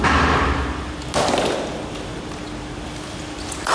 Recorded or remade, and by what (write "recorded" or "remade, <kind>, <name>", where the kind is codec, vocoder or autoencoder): recorded